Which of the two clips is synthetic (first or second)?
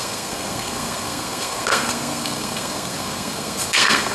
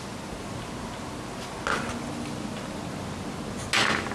first